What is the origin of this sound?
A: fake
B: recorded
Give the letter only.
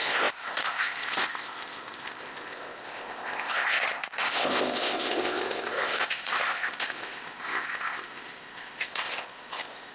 A